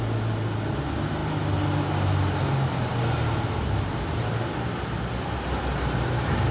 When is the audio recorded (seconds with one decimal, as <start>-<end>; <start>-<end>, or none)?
0.0-6.5